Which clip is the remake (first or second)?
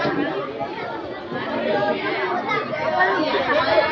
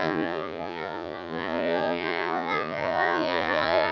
second